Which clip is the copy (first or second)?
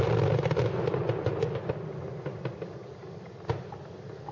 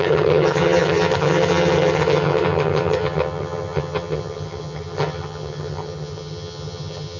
second